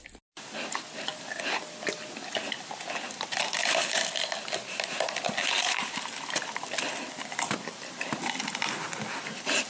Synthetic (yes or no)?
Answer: no